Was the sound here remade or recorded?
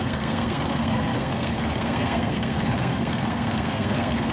remade